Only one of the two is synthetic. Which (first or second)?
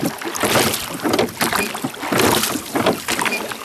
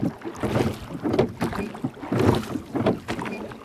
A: first